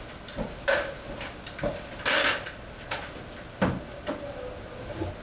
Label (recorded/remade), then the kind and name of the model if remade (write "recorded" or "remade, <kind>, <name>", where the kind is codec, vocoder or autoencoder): recorded